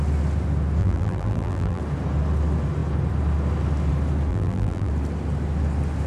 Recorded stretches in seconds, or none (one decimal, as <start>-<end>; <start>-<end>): 0.0-0.8; 1.8-4.3; 4.9-6.1